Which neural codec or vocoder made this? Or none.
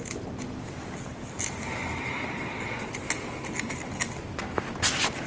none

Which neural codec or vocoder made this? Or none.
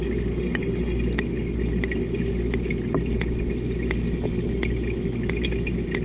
none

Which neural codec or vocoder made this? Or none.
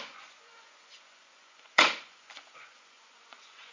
vocoder, Vocos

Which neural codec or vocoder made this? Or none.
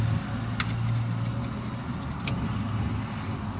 none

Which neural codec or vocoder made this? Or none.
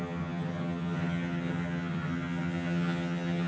vocoder, HiFi-GAN